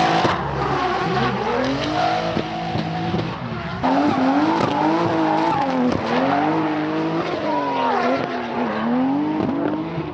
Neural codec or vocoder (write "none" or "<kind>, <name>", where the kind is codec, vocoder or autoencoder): none